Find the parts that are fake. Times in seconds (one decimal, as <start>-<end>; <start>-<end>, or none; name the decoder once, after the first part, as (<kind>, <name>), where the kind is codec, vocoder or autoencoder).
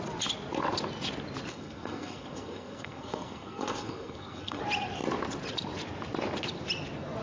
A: 1.5-4.6 (codec, SNAC)